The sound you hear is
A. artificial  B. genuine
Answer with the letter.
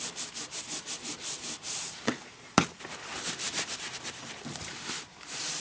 A